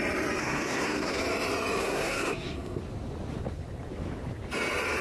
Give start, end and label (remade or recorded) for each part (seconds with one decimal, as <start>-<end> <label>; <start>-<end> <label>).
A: 0.0-0.4 recorded; 0.4-1.2 remade; 1.2-1.8 recorded; 1.8-2.8 remade; 2.8-5.0 recorded